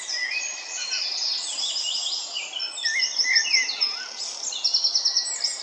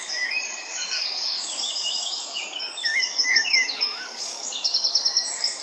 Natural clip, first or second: first